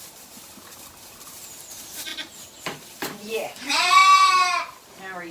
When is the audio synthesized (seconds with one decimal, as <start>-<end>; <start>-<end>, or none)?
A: 0.0-4.0